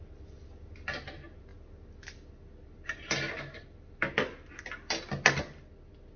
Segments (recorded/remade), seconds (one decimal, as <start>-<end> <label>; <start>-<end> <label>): 0.0-6.2 recorded